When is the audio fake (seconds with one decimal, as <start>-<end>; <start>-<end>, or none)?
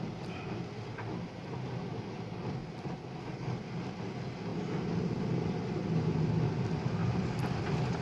2.6-3.2; 7.0-7.6